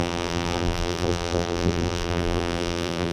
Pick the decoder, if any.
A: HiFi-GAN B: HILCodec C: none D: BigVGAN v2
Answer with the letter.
D